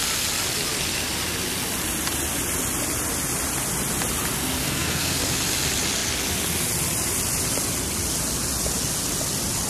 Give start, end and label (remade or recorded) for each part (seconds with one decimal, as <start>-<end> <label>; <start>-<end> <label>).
0.0-4.6 recorded; 4.6-5.2 remade; 5.2-9.7 recorded